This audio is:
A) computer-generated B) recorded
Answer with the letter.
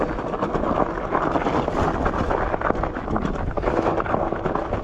B